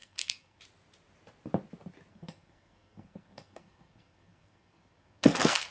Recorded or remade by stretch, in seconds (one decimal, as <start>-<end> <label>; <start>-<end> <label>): 0.0-0.6 remade; 0.6-2.1 recorded; 2.1-5.7 remade